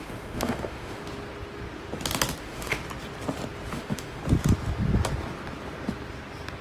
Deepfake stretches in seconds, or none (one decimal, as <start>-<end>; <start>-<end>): 0.0-1.0; 2.4-2.8; 3.7-4.2